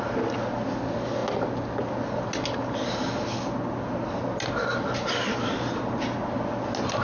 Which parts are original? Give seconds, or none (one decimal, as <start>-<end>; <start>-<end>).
0.0-7.0